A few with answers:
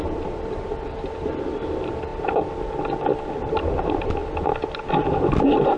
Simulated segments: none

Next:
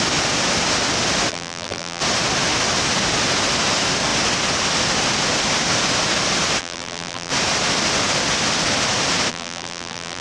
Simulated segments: 1.3-2.0 (vocoder, BigVGAN v2); 6.6-7.3; 9.3-10.2